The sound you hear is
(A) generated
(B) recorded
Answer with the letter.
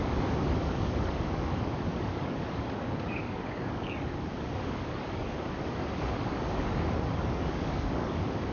A